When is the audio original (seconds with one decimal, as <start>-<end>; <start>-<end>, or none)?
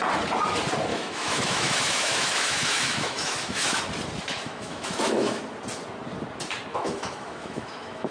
0.0-0.9; 3.8-4.3; 5.4-6.7